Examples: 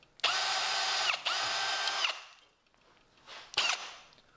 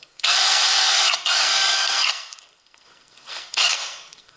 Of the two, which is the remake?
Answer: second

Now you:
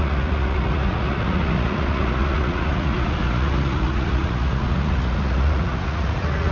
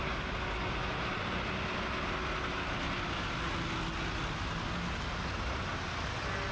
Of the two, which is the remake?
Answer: first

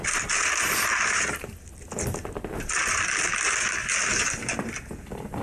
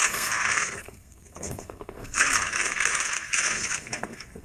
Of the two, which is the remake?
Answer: second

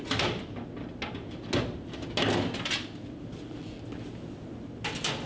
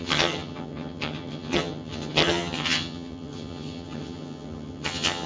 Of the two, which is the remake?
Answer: second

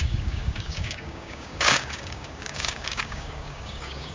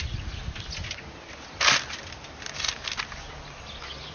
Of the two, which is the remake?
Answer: first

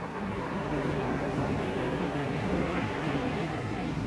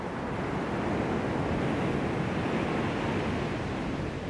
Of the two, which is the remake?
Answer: first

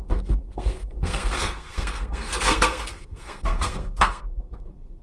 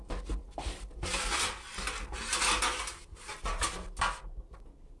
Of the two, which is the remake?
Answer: first